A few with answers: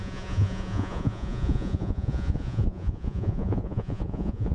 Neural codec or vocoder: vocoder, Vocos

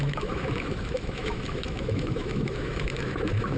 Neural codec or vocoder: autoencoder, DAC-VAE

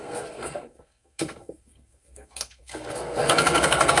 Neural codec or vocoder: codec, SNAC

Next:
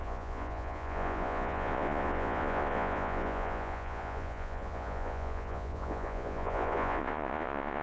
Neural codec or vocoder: vocoder, Vocos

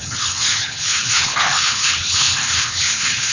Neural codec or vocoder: codec, HILCodec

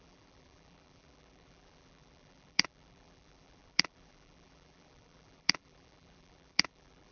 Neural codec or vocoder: vocoder, BigVGAN v2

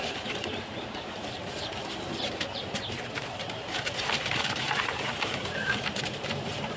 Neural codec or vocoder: vocoder, BigVGAN v2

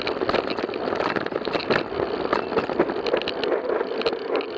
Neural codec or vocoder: none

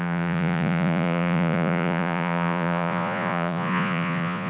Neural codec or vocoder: vocoder, Vocos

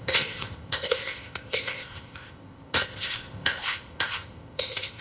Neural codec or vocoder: codec, ZipCodec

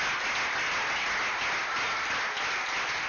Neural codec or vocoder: none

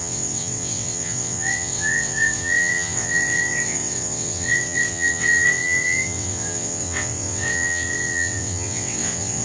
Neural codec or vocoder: vocoder, WaveNeXt